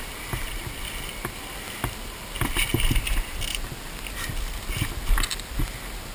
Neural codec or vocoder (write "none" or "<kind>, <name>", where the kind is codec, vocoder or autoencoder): none